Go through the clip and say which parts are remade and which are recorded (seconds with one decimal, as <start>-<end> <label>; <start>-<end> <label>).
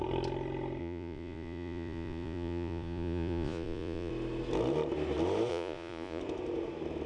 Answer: 0.0-0.8 recorded; 0.8-4.1 remade; 4.1-5.5 recorded; 5.5-6.2 remade; 6.2-7.1 recorded